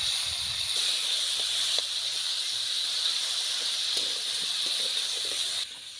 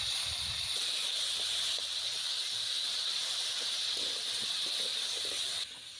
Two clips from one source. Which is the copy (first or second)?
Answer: first